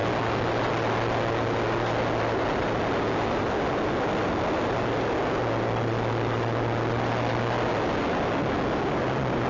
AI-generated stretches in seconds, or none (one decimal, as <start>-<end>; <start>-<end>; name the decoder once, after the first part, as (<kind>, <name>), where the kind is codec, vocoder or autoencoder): none